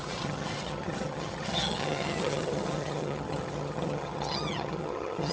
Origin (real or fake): fake